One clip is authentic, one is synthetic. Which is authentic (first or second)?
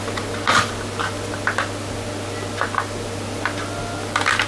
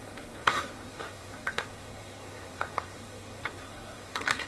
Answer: first